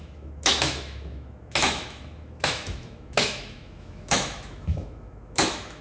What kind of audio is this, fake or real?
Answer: fake